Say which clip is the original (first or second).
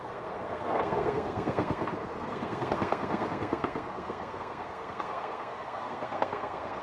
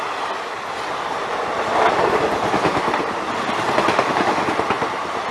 second